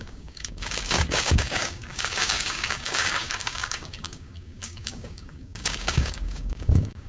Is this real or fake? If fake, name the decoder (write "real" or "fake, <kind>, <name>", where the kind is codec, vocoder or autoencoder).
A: fake, codec, DAC